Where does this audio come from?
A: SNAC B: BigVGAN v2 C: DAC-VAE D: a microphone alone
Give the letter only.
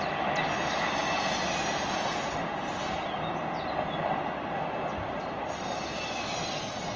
D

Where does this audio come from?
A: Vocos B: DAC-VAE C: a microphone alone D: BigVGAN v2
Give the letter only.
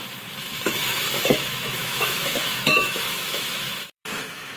B